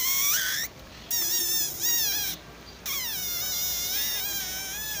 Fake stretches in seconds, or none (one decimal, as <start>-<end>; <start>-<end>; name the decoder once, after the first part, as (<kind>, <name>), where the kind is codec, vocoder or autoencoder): none